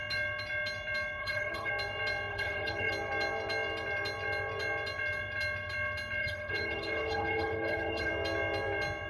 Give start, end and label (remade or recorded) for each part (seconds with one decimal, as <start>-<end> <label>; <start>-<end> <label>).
0.0-1.2 recorded; 1.2-1.7 remade; 1.7-2.3 recorded; 2.3-2.9 remade; 2.9-6.2 recorded; 6.2-8.1 remade; 8.1-9.1 recorded